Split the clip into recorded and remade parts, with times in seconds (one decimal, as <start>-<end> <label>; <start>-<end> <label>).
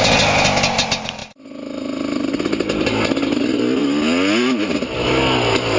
0.0-5.8 recorded